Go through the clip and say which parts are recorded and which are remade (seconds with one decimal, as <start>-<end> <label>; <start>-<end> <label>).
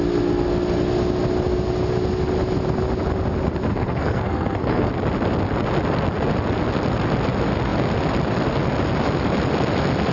0.0-3.7 recorded; 3.7-4.9 remade; 4.9-10.1 recorded